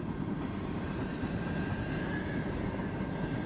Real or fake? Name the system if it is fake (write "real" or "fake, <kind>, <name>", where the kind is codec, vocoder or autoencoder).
fake, vocoder, BigVGAN v2